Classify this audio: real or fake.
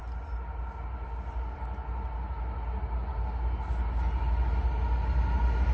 real